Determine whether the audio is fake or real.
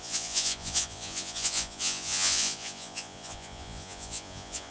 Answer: fake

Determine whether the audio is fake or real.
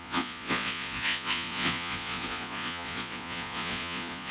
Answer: fake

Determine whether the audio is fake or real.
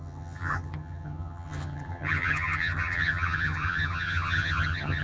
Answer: fake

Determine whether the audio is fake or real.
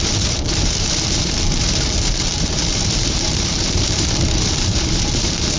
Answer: fake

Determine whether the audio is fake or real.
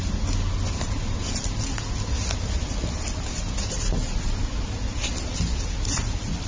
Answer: real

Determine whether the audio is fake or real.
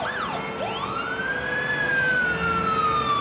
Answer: real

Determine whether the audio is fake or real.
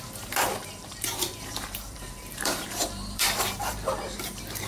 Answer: fake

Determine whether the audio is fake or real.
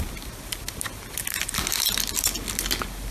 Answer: fake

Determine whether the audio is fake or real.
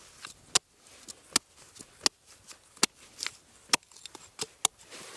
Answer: real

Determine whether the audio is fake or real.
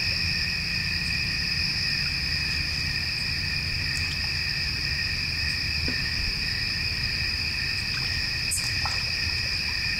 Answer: real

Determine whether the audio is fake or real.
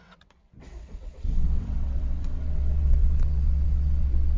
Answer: fake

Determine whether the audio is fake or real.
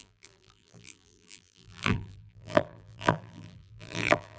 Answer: fake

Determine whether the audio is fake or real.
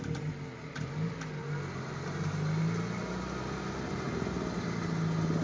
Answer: real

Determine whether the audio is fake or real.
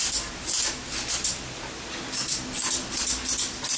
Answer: real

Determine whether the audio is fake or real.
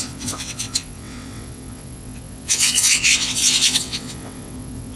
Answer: fake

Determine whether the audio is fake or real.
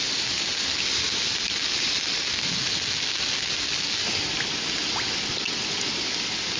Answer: real